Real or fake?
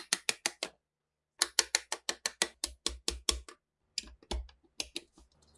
real